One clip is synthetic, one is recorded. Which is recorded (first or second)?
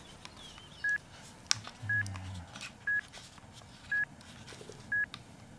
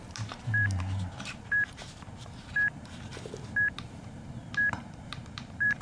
first